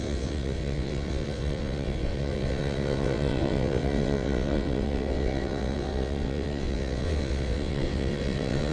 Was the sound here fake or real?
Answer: fake